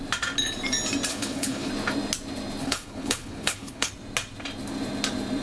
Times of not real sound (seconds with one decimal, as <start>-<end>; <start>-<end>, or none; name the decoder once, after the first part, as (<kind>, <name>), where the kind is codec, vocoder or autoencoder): 1.1-1.7 (codec, HILCodec); 2.6-3.9